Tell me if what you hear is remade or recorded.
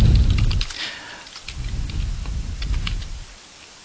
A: recorded